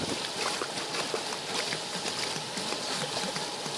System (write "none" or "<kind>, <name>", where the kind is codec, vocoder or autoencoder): none